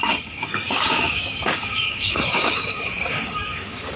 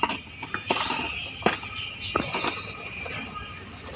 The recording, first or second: second